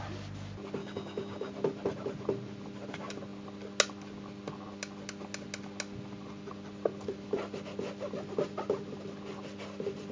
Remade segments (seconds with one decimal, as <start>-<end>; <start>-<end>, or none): 0.8-1.5